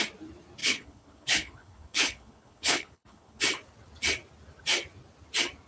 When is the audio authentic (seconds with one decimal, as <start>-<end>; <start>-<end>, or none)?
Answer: 0.0-0.6; 3.4-5.7